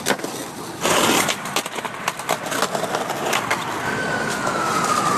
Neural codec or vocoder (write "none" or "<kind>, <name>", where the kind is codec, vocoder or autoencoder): none